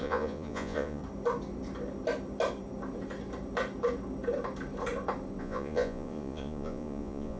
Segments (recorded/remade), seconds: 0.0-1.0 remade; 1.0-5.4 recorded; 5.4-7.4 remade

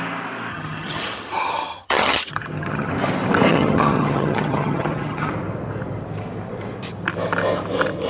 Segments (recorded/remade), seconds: 0.0-0.5 recorded; 0.5-2.9 remade; 2.9-3.5 recorded; 3.5-5.3 remade; 5.3-8.1 recorded

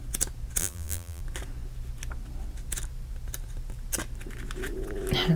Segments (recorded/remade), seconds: 0.0-0.6 recorded; 0.6-1.2 remade; 1.2-5.4 recorded

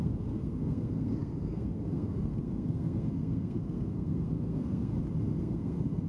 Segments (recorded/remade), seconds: 0.0-4.9 remade; 4.9-5.4 recorded; 5.4-6.1 remade